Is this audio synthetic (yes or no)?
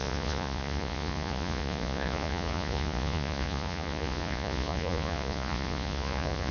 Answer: yes